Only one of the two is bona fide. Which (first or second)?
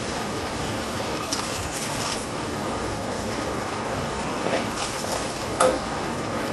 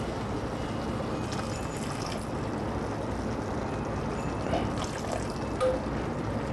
second